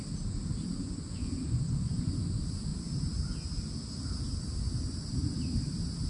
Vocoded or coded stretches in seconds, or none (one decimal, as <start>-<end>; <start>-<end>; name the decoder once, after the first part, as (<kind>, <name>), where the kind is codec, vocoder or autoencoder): 0.7-2.1 (vocoder, Vocos)